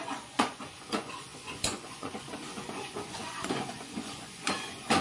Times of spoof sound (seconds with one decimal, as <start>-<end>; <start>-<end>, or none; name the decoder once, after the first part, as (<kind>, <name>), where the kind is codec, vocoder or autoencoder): 0.0-5.0 (vocoder, Vocos)